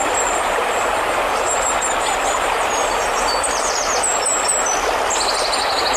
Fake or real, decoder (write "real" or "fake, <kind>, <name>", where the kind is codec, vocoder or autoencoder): real